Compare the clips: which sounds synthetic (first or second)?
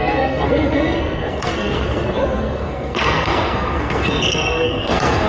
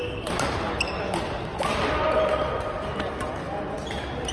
first